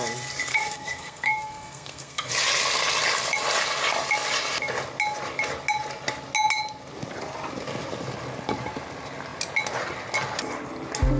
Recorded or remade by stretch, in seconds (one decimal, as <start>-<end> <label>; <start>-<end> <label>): 0.0-0.5 recorded; 0.5-2.3 remade; 2.3-11.2 recorded